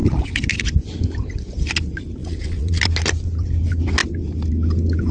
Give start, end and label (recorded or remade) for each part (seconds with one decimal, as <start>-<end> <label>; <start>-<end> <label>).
0.0-2.2 recorded; 2.2-2.8 remade; 2.8-5.1 recorded